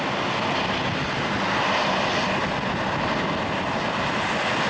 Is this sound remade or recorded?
recorded